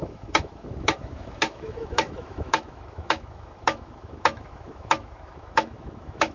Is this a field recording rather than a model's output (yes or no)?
no